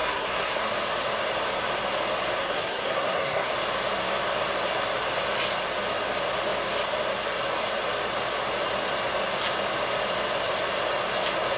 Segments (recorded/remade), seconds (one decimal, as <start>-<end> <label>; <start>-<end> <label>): 0.0-0.6 remade; 0.6-2.4 recorded; 2.4-3.5 remade; 3.5-11.6 recorded